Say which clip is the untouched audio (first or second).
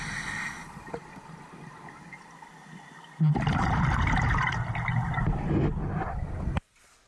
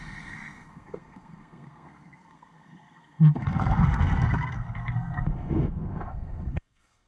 first